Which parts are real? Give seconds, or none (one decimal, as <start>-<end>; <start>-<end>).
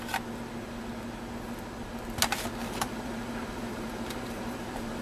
0.0-2.6